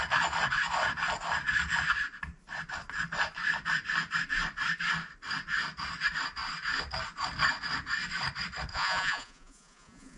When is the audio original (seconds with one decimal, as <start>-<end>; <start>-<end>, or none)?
0.0-8.7